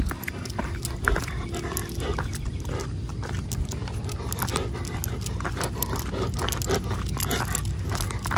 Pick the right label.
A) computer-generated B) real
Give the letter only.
B